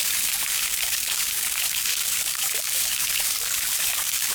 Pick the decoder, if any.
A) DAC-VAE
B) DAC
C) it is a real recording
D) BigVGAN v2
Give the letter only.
B